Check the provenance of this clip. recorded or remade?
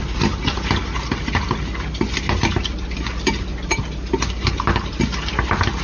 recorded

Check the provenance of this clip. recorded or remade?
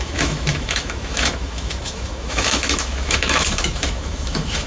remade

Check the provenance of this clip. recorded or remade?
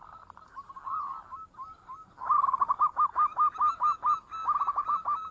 recorded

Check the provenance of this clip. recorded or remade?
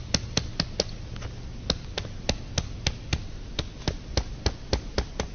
recorded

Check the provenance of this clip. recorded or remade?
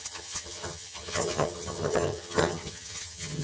remade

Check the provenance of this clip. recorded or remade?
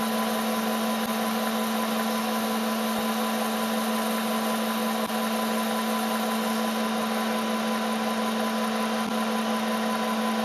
recorded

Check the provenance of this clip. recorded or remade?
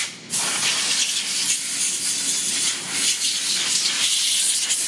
recorded